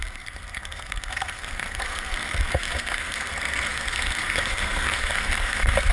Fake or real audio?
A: fake